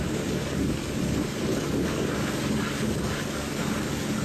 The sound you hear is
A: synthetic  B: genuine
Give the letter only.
A